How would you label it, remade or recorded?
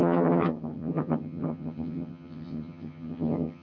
remade